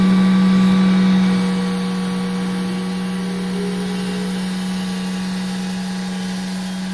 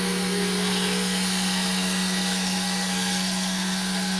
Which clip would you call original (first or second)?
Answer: first